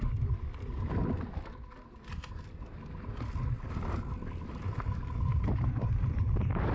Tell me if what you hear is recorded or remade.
recorded